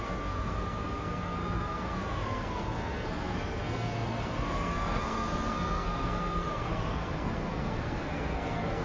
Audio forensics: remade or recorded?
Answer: remade